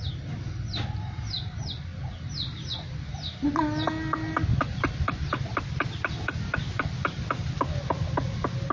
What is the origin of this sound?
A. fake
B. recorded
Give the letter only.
B